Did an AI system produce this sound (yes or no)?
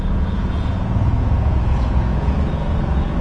yes